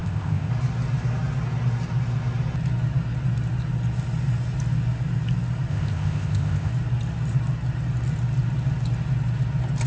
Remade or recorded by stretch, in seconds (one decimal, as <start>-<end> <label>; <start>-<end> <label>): 0.0-0.5 remade; 0.5-5.7 recorded; 5.7-6.7 remade; 6.7-9.9 recorded